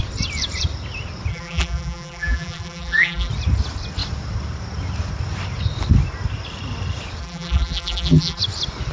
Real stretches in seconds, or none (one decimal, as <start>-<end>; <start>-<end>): 0.0-1.3; 3.3-7.2; 8.4-8.9